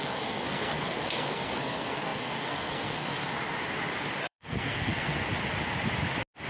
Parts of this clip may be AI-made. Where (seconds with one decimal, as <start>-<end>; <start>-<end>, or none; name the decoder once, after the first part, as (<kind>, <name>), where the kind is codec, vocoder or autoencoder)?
0.0-3.3 (codec, SNAC); 4.2-5.2